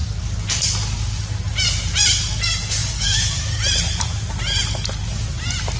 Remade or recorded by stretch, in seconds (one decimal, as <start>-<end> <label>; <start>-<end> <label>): 0.0-2.8 recorded; 2.8-3.6 remade; 3.6-5.8 recorded